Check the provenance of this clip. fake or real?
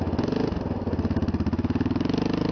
real